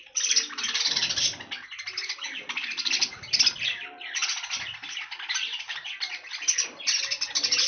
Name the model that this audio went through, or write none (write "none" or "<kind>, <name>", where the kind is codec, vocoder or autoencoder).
none